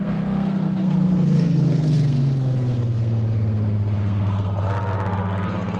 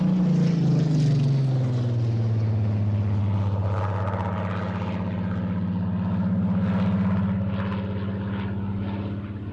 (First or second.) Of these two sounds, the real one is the second